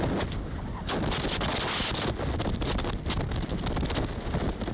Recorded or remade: recorded